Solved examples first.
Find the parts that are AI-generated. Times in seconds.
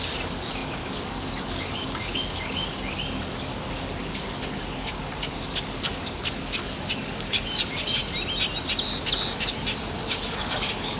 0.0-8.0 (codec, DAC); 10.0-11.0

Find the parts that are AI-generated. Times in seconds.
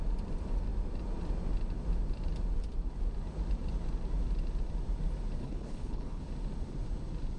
5.4-6.2 (codec, HILCodec)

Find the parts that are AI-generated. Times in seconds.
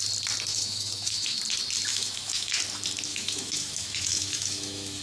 0.5-1.4 (autoencoder, DAC-VAE); 1.9-2.6; 3.1-5.0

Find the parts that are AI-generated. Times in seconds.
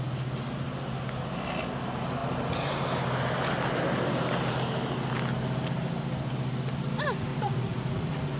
7.3-8.4 (vocoder, Vocos)